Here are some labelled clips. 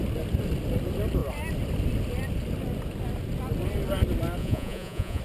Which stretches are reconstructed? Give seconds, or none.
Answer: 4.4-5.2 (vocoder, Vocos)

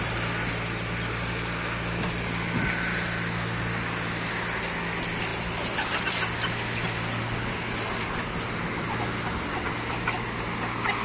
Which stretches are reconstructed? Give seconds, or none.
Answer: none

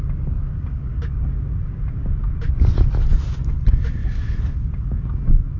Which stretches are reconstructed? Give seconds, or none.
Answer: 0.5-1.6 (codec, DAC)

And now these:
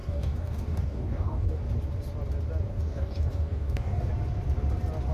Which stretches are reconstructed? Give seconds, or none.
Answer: 0.0-1.6 (codec, DAC); 2.7-4.1

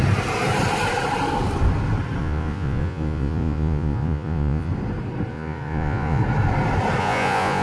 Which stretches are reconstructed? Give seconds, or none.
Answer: 2.2-4.7 (vocoder, Vocos); 5.3-6.2; 7.0-7.6